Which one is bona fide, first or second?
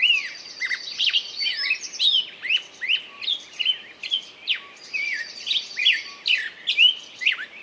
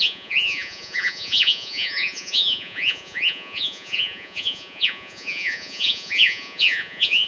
first